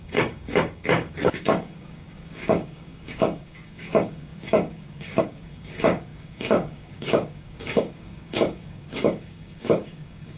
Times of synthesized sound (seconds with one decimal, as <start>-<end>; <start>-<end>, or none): 0.0-10.4